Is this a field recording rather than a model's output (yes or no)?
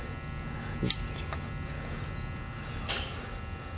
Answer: yes